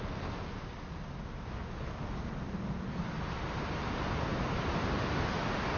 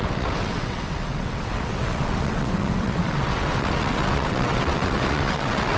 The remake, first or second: second